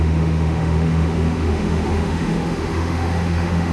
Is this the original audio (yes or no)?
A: no